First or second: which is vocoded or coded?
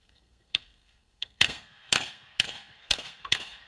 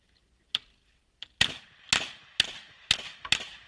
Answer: first